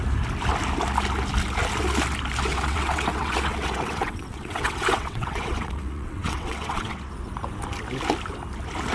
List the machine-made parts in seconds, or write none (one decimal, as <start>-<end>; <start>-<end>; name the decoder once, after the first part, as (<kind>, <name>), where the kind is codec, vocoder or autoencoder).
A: 2.5-7.1 (vocoder, WaveNeXt)